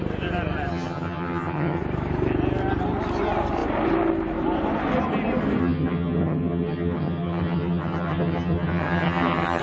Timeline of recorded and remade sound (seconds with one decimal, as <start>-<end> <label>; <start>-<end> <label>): 0.0-0.7 recorded; 0.7-1.8 remade; 1.8-5.6 recorded; 5.6-9.6 remade